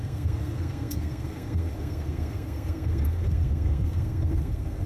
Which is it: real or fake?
fake